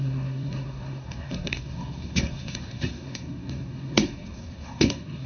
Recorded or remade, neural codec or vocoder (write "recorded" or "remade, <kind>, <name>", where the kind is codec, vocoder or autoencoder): remade, codec, SNAC